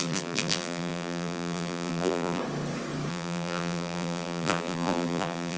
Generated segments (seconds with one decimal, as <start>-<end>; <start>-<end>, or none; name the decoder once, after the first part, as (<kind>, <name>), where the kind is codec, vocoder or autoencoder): 0.0-2.4 (vocoder, BigVGAN v2); 3.1-5.6

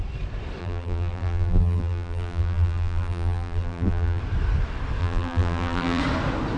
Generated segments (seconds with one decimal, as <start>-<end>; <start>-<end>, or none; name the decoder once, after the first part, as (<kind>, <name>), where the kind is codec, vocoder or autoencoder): 0.6-4.2 (vocoder, BigVGAN v2); 5.0-6.0

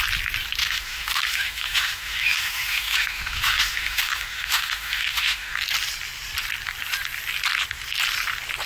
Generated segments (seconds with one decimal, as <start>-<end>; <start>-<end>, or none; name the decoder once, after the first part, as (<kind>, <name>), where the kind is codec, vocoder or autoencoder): 0.6-5.6 (autoencoder, DAC-VAE)

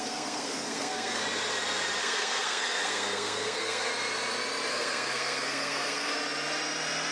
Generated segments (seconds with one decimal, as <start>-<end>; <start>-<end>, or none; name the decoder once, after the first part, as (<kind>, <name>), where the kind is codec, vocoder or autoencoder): 0.0-1.2 (codec, SNAC); 2.0-3.9; 4.7-6.1

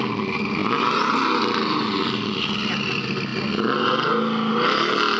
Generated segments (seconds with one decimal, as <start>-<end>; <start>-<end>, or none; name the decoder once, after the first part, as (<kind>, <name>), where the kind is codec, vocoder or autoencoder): none

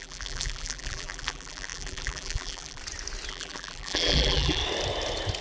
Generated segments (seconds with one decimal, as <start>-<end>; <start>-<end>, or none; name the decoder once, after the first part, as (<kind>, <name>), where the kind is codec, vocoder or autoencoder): 0.0-2.8 (vocoder, BigVGAN v2); 3.3-4.6

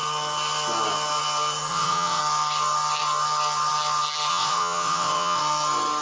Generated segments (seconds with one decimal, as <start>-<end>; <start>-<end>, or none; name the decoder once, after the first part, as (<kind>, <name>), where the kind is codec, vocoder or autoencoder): 1.7-2.2 (vocoder, WaveNeXt); 4.3-5.4

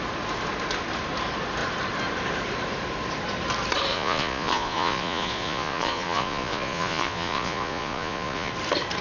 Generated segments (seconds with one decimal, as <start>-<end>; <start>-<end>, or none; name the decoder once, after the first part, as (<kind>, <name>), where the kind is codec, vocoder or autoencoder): 3.9-8.5 (vocoder, Vocos)